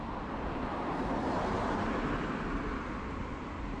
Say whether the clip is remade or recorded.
recorded